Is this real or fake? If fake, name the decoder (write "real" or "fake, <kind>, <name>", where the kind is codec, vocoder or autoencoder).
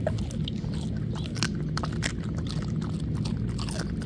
real